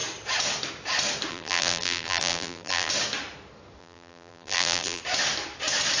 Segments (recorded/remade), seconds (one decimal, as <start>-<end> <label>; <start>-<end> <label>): 0.0-1.3 recorded; 1.3-2.9 remade; 2.9-3.8 recorded; 3.8-5.0 remade; 5.0-6.0 recorded